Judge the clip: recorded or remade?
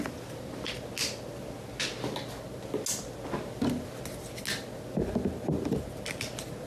recorded